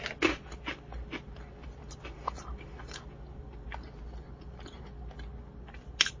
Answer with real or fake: real